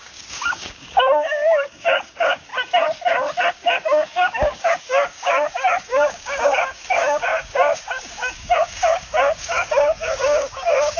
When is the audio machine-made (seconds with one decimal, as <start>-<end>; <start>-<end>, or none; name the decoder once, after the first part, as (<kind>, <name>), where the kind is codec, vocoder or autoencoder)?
0.0-2.5 (codec, DAC); 3.5-11.0